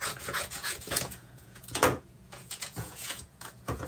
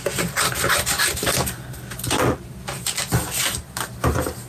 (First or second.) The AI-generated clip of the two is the first